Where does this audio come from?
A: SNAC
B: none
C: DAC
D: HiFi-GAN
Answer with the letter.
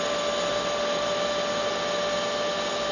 B